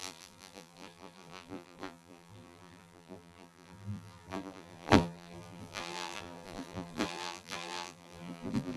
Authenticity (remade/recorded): remade